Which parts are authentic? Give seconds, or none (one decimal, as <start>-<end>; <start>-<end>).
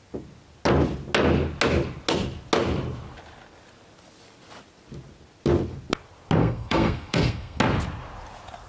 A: 0.0-6.4; 7.6-8.7